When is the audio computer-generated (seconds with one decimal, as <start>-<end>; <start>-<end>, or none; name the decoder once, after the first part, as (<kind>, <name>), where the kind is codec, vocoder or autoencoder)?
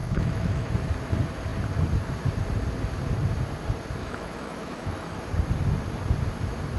0.0-0.7 (autoencoder, DAC-VAE); 4.0-5.2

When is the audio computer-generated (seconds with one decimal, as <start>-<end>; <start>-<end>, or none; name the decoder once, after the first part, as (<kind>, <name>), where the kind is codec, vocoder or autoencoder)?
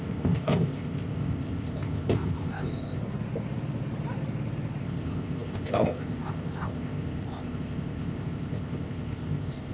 0.0-3.0 (codec, ZipCodec); 4.8-9.7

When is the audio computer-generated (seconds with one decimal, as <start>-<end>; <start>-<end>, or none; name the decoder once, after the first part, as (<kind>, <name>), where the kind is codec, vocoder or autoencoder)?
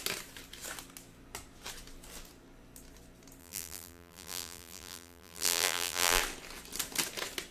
3.4-6.2 (vocoder, BigVGAN v2)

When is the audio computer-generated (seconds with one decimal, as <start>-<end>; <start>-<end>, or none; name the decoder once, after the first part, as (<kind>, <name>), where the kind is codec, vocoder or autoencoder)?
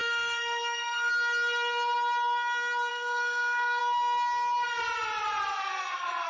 0.0-1.1 (codec, SNAC); 2.9-3.8; 5.6-6.3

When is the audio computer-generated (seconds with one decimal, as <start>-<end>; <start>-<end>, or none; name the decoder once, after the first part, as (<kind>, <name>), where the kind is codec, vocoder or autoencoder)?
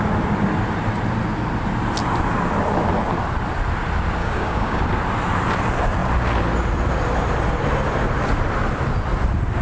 4.2-4.8 (codec, DAC)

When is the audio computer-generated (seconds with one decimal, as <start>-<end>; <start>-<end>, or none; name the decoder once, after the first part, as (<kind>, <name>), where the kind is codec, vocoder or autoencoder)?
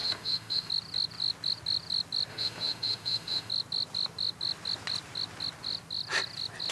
0.0-0.7 (autoencoder, DAC-VAE); 2.3-3.5